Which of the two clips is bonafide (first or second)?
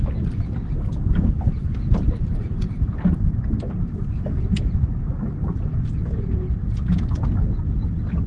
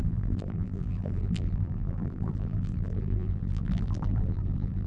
first